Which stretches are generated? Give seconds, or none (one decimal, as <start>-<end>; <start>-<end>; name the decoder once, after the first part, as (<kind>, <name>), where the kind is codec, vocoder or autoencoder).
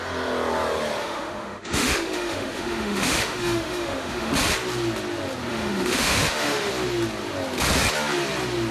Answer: 1.0-4.3 (autoencoder, DAC-VAE); 5.5-6.7